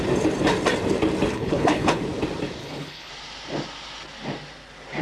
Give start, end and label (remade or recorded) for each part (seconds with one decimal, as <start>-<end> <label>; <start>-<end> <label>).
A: 0.0-1.3 recorded; 1.3-2.0 remade; 2.0-2.6 recorded; 2.6-3.1 remade; 3.1-5.0 recorded